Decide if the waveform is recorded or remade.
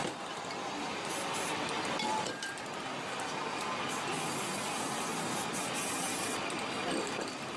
recorded